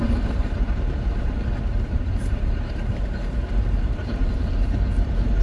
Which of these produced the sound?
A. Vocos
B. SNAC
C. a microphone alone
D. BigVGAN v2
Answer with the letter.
D